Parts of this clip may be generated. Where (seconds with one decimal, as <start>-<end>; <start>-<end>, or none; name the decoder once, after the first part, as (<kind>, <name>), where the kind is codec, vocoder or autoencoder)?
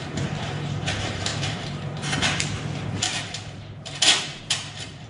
0.0-5.1 (vocoder, BigVGAN v2)